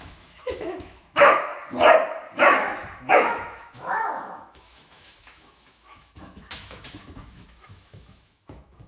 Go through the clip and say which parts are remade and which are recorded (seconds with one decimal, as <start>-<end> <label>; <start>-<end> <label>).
0.0-1.5 remade; 1.5-2.3 recorded; 2.3-8.9 remade